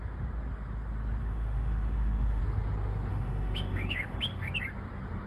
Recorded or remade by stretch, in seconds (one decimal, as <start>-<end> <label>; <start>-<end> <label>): 0.0-1.2 recorded; 1.2-2.4 remade; 2.4-3.1 recorded; 3.1-4.5 remade; 4.5-5.3 recorded